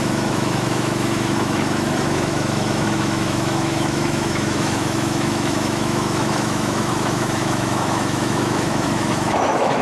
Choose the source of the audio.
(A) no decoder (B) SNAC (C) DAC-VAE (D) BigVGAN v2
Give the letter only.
C